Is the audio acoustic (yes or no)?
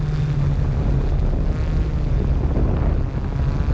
yes